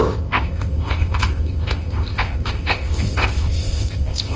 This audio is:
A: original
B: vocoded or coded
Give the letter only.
B